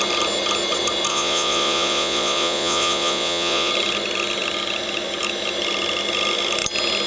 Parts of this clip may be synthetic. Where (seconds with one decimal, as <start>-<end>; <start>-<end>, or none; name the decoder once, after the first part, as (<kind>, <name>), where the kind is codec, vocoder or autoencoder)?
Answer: 1.1-3.7 (vocoder, Vocos)